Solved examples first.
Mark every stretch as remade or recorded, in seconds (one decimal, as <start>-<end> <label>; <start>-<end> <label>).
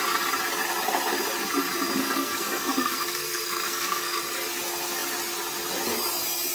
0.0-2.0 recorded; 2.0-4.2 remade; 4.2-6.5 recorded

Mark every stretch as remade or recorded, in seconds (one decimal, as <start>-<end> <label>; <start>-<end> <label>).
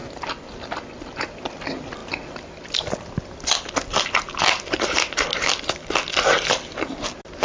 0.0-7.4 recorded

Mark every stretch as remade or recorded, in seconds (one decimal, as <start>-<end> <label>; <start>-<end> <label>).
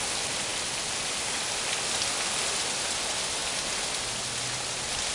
0.0-5.1 recorded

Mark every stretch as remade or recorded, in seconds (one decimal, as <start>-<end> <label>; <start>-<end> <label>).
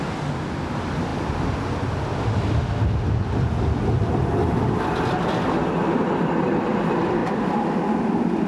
0.0-8.5 recorded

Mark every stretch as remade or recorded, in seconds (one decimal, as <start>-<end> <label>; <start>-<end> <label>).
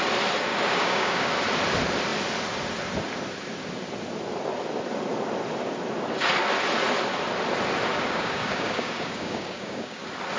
0.0-0.5 recorded; 0.5-1.3 remade; 1.3-7.9 recorded; 7.9-10.0 remade; 10.0-10.4 recorded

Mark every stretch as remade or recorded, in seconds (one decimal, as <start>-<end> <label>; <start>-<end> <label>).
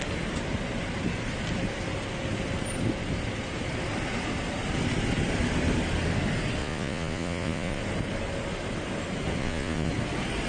0.0-6.6 recorded; 6.6-7.8 remade; 7.8-9.4 recorded; 9.4-9.9 remade; 9.9-10.5 recorded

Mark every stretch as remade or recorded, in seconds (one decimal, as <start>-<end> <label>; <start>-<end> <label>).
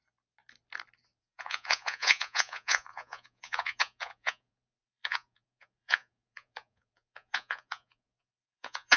0.0-1.2 recorded; 1.2-9.0 remade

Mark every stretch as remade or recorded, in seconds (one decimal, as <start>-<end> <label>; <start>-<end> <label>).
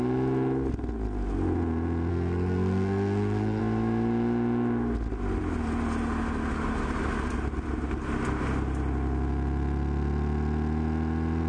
0.0-2.1 recorded; 2.1-3.6 remade; 3.6-11.5 recorded